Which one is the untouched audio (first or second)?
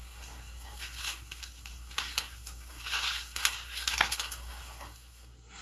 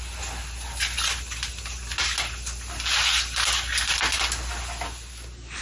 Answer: second